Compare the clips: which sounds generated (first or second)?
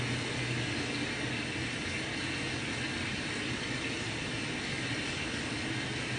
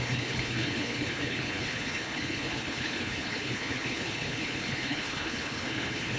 second